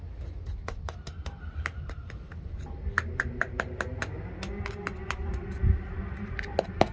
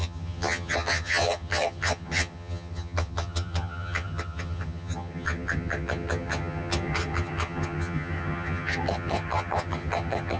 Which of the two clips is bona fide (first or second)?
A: first